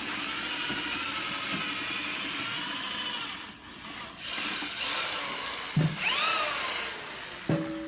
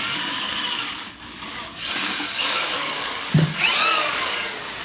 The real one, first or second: first